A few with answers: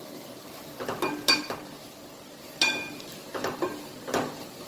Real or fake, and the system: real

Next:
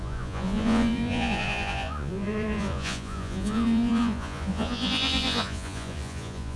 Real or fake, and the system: fake, vocoder, Vocos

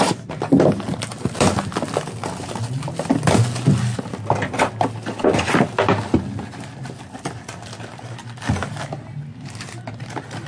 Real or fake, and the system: real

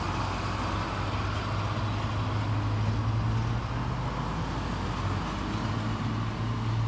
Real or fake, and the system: real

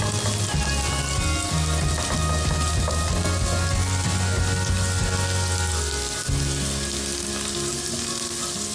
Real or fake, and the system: real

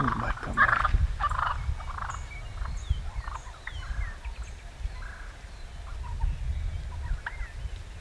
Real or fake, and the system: real